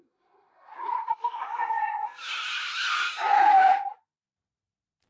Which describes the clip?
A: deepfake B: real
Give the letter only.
B